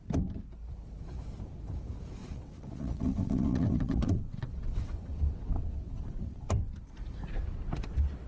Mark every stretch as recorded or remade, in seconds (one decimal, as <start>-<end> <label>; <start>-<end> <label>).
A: 0.0-2.2 recorded; 2.2-6.5 remade; 6.5-8.3 recorded